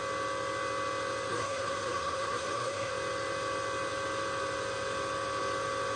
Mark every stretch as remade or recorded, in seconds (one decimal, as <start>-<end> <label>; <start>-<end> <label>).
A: 0.0-1.3 recorded; 1.3-2.9 remade; 2.9-6.0 recorded